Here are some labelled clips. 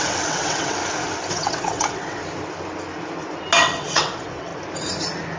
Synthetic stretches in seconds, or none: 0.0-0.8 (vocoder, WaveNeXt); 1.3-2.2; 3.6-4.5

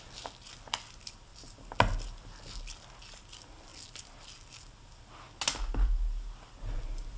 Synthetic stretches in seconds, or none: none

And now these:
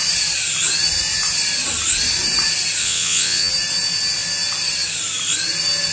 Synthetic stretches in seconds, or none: 2.8-3.5 (vocoder, WaveNeXt)

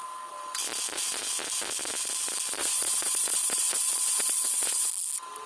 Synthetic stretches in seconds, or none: 2.6-4.9 (vocoder, WaveNeXt)